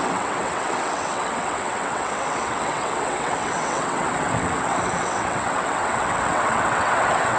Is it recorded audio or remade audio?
remade